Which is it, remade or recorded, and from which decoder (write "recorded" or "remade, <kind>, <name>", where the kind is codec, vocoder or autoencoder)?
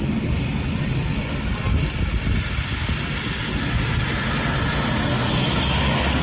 recorded